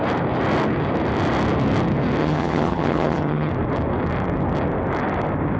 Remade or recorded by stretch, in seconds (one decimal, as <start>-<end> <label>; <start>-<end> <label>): 0.0-2.2 recorded; 2.2-3.5 remade; 3.5-5.6 recorded